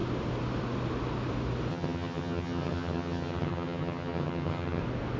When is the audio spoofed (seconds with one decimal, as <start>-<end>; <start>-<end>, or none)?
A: 1.7-4.8